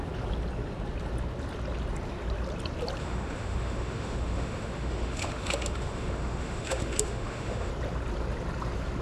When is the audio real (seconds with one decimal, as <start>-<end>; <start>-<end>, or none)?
0.0-3.0; 7.7-9.0

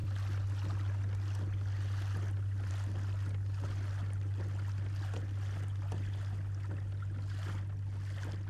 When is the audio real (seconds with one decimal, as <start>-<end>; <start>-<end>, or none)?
0.0-8.5

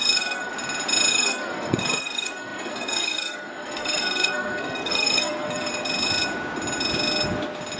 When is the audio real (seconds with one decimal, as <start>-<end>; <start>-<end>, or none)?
0.5-1.1; 5.7-7.8

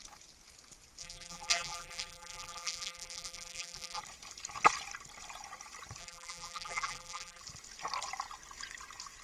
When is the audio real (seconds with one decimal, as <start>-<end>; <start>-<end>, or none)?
0.0-1.0; 4.0-6.0; 7.4-9.2